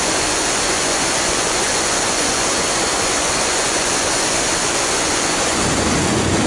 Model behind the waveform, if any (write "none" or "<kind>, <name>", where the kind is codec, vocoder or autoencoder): vocoder, Vocos